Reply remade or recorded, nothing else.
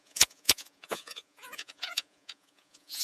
remade